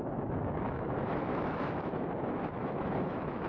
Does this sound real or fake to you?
fake